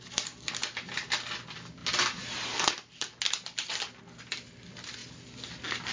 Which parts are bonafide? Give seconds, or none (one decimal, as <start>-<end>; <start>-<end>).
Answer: 0.0-5.9